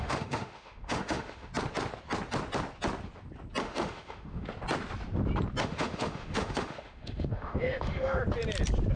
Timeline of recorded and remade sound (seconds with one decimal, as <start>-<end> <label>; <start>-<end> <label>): 0.0-1.5 remade; 1.5-3.6 recorded; 3.6-4.5 remade; 4.5-5.6 recorded; 5.6-8.2 remade; 8.2-9.0 recorded